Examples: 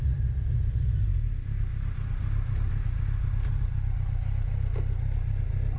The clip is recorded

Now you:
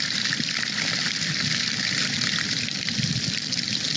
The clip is remade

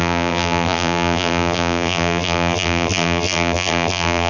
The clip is remade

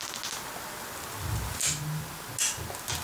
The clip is recorded